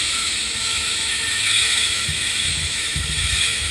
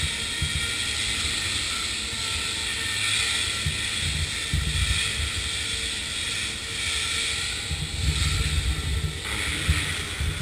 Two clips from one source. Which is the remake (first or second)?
first